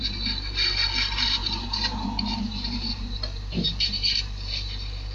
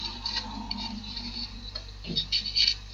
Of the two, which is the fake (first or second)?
first